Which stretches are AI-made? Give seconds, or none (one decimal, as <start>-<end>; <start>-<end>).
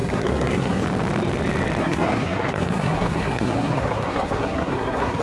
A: 0.0-0.8; 1.8-5.2